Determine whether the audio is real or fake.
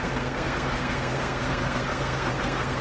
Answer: fake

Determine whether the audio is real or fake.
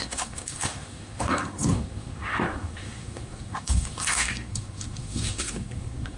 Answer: fake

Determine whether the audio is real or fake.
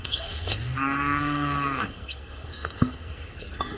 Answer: fake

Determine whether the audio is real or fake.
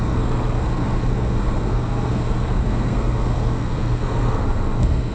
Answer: fake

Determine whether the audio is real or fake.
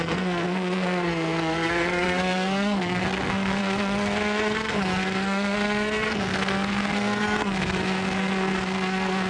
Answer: fake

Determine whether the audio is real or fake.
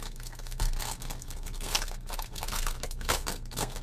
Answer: fake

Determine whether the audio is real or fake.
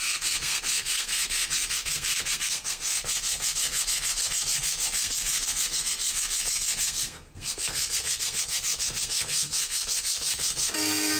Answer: fake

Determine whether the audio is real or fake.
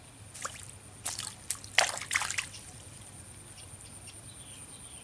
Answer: real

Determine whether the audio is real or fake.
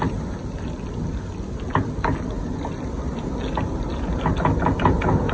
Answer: real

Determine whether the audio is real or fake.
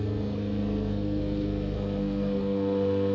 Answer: fake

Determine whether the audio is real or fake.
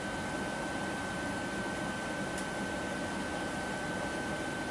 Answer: real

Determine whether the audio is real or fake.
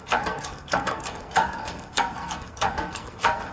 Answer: fake